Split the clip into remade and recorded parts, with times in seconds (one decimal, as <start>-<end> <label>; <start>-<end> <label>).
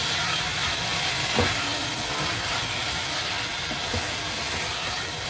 0.0-0.5 recorded; 0.5-1.1 remade; 1.1-2.8 recorded; 2.8-4.7 remade; 4.7-5.3 recorded